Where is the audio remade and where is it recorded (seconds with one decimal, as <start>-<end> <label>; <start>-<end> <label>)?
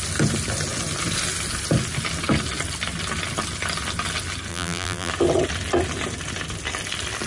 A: 0.0-4.5 recorded; 4.5-5.1 remade; 5.1-7.3 recorded